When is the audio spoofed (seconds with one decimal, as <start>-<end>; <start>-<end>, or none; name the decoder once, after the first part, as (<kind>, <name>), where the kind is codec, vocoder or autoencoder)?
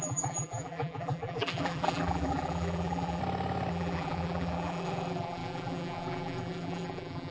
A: 0.0-3.2 (vocoder, BigVGAN v2); 3.7-7.3